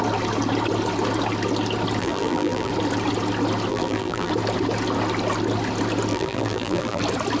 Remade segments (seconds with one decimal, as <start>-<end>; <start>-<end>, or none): 2.0-2.7; 3.7-4.3; 6.1-7.0